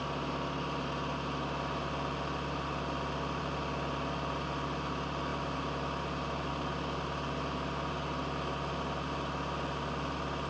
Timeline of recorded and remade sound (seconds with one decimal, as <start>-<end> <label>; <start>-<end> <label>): 0.0-10.5 recorded